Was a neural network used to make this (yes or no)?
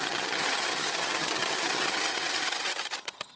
yes